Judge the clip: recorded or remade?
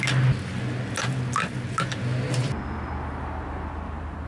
recorded